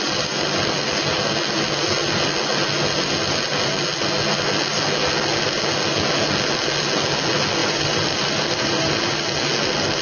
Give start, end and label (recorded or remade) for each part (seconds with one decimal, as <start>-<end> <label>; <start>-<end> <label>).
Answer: 0.0-7.6 recorded; 7.6-9.2 remade; 9.2-10.0 recorded